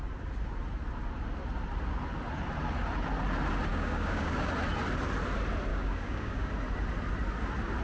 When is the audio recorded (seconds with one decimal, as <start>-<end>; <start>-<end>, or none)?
0.0-3.7; 4.5-5.7; 6.5-7.8